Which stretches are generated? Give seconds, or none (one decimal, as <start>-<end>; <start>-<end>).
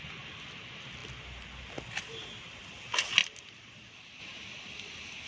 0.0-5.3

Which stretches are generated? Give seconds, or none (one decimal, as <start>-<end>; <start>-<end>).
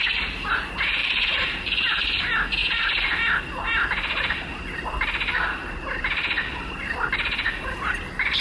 1.0-2.2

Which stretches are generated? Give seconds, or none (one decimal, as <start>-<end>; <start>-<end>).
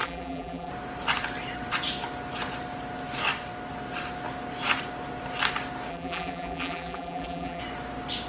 0.0-0.7; 5.9-7.6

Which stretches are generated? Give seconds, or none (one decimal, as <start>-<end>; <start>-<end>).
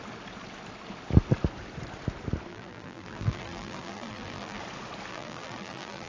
2.5-4.6; 5.1-6.1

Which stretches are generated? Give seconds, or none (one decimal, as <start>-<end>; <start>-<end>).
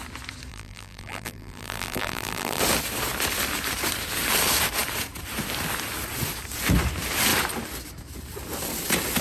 0.5-2.6